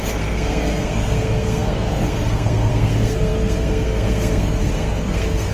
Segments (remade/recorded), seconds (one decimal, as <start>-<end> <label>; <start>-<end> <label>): 0.0-5.5 remade

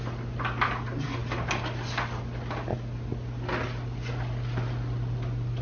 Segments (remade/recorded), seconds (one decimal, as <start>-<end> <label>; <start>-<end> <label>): 0.0-5.6 recorded

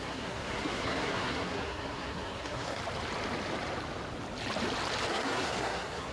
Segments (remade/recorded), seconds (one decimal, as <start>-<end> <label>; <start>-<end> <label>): 0.0-2.8 remade; 2.8-5.1 recorded; 5.1-6.1 remade

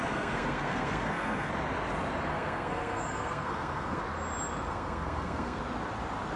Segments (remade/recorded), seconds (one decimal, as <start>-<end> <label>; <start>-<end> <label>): 0.0-1.5 remade; 1.5-2.3 recorded; 2.3-4.0 remade; 4.0-4.7 recorded; 4.7-5.6 remade; 5.6-6.4 recorded

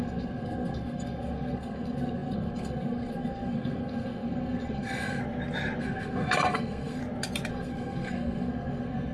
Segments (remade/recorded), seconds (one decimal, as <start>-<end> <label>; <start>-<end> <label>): 0.0-5.2 remade; 5.2-5.8 recorded; 5.8-7.0 remade; 7.0-7.5 recorded; 7.5-9.1 remade

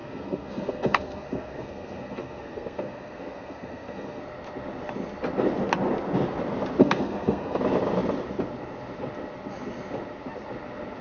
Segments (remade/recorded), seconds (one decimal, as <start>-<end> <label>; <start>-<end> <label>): 0.0-4.2 remade; 4.2-6.8 recorded; 6.8-7.6 remade; 7.6-11.0 recorded

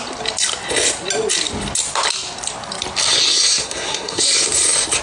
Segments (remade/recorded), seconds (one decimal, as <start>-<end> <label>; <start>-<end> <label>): 0.0-3.6 recorded; 3.6-4.2 remade; 4.2-5.0 recorded